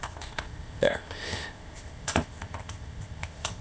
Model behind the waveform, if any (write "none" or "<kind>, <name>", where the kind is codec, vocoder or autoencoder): codec, ZipCodec